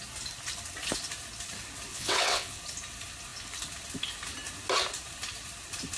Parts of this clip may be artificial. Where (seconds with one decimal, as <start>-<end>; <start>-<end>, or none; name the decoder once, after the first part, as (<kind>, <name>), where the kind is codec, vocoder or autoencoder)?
1.9-2.6 (vocoder, WaveNeXt)

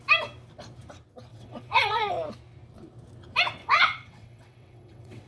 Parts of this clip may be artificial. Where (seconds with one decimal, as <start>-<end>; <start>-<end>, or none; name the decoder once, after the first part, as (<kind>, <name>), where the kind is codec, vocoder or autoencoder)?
1.3-2.1 (vocoder, WaveNeXt); 3.6-5.3

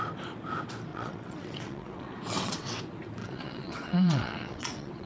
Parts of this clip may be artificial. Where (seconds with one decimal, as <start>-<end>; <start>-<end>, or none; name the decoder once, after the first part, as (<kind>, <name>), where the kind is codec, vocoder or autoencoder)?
0.9-2.8 (vocoder, WaveNeXt); 3.2-5.1